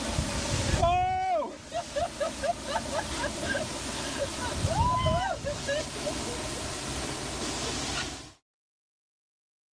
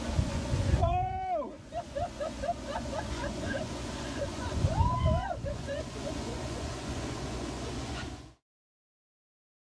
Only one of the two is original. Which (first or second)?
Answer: first